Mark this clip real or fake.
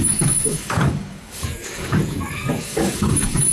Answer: fake